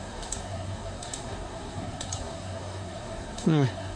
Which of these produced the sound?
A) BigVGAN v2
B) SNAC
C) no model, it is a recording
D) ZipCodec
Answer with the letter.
B